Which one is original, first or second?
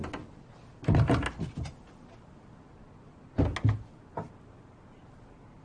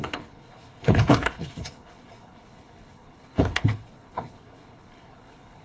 first